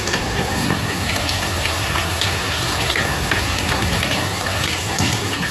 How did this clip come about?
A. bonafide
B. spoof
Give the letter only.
B